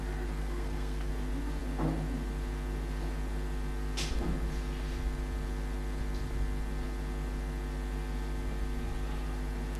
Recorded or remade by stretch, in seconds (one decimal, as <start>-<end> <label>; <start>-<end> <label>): 0.0-0.4 recorded; 0.4-1.1 remade; 1.1-9.8 recorded